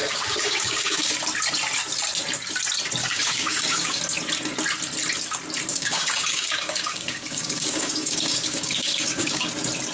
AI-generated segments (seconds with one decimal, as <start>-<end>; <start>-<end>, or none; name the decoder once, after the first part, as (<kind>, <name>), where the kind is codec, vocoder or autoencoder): 0.0-1.1 (codec, DAC); 3.0-4.0; 5.7-9.5